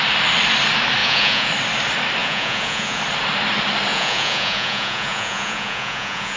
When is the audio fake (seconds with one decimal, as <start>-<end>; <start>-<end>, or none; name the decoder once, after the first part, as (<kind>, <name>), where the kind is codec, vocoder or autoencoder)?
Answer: 1.0-1.5 (vocoder, Vocos); 2.2-3.0; 3.9-6.4